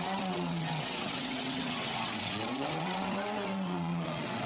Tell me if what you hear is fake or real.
fake